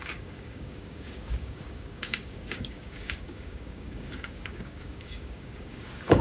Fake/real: fake